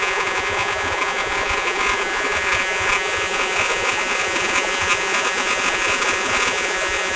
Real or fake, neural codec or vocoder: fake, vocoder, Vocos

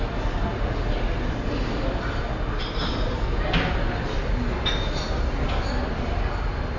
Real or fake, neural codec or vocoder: real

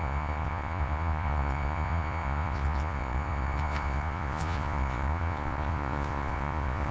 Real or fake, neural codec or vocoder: fake, vocoder, Vocos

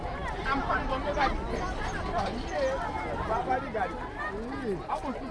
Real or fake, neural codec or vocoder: real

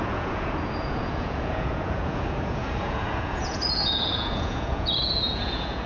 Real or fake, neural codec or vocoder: fake, vocoder, Vocos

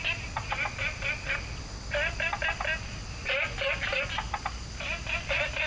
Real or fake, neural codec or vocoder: real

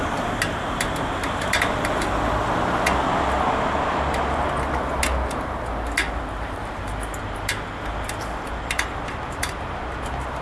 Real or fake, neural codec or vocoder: real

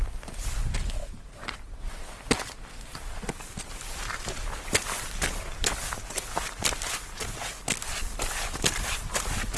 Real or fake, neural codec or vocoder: real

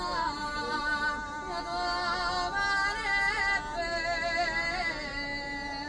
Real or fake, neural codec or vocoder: real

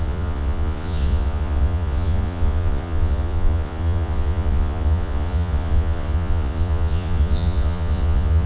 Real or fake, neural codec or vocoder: fake, vocoder, Vocos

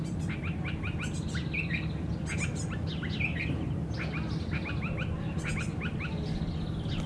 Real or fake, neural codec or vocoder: real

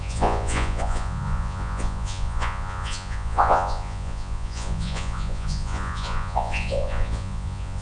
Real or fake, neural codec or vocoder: fake, vocoder, Vocos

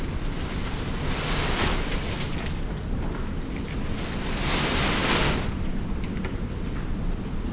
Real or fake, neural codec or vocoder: real